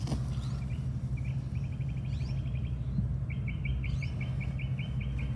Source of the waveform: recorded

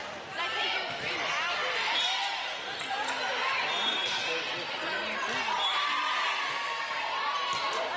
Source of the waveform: recorded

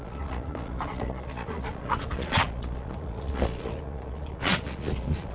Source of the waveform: remade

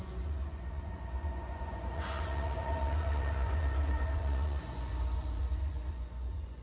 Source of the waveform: remade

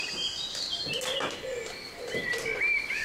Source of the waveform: recorded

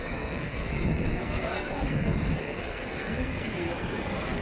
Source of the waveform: remade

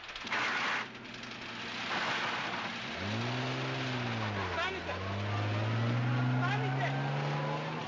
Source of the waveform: recorded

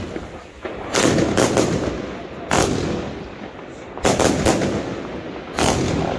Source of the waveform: recorded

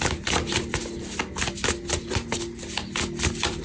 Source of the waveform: recorded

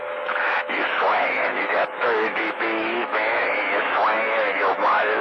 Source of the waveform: remade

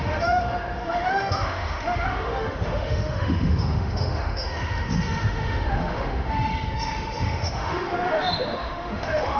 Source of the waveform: remade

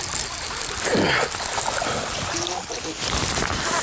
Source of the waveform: recorded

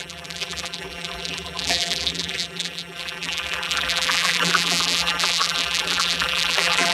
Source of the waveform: remade